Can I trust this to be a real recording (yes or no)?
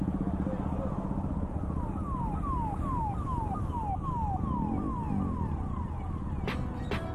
yes